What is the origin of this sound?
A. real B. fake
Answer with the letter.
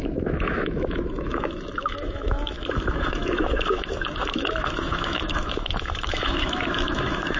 B